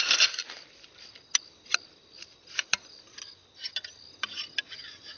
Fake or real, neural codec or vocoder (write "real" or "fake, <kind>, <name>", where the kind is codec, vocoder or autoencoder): real